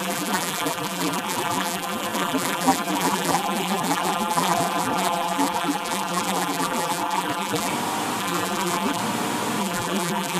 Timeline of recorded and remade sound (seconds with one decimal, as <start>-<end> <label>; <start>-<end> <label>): 0.0-7.7 remade; 7.7-8.2 recorded; 8.2-9.0 remade; 9.0-9.6 recorded; 9.6-10.4 remade